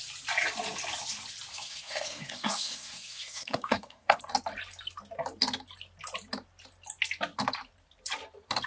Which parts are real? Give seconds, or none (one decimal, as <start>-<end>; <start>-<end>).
0.0-1.5; 4.2-8.7

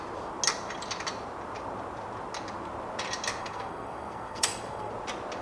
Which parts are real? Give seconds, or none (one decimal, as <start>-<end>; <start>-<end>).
0.0-3.4; 4.9-5.4

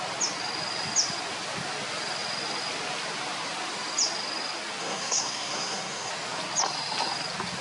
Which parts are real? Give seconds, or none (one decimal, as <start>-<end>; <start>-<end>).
0.0-4.8; 6.1-7.6